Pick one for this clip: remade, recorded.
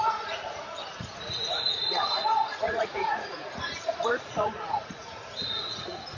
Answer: remade